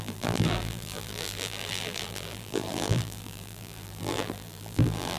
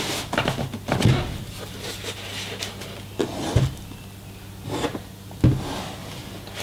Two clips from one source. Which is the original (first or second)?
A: second